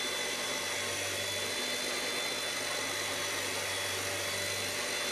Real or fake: real